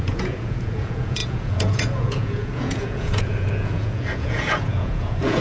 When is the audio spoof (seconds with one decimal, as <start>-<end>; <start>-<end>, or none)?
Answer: 0.0-5.4